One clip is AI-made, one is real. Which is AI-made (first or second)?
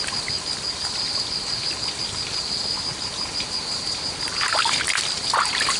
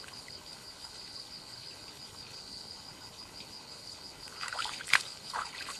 second